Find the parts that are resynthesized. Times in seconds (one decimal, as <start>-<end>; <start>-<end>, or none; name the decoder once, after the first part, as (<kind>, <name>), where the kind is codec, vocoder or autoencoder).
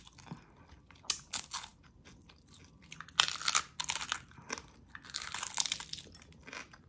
none